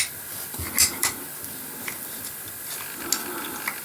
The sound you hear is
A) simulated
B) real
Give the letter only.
B